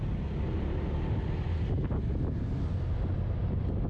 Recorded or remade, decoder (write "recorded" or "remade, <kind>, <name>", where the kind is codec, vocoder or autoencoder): recorded